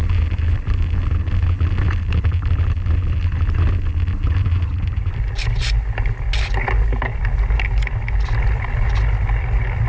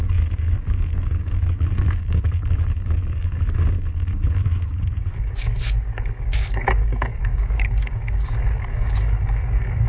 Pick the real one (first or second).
first